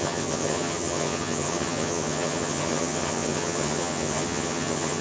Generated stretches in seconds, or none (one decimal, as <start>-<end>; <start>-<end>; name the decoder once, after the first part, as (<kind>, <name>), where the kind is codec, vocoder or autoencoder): 0.0-5.0 (vocoder, HiFi-GAN)